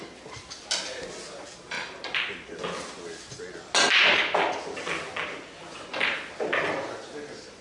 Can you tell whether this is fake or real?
real